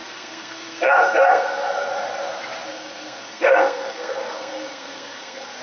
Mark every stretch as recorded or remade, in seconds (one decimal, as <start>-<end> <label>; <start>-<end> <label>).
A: 0.0-1.9 remade; 1.9-2.7 recorded; 2.7-5.6 remade